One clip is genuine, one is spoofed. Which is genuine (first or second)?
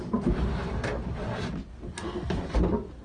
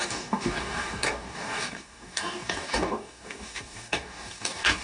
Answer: first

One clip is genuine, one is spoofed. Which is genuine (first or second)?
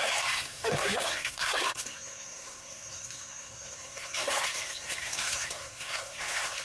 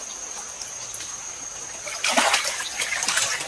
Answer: second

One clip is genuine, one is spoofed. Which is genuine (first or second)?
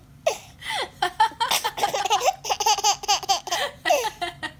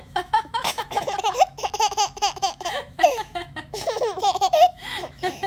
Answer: first